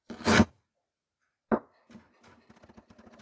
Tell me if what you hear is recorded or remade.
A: recorded